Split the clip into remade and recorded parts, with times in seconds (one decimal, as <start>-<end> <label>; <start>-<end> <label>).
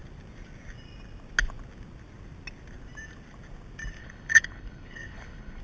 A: 0.0-4.0 recorded; 4.0-5.6 remade